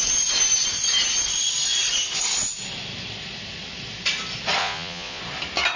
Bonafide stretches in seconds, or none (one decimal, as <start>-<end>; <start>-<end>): 0.0-4.6; 5.2-5.8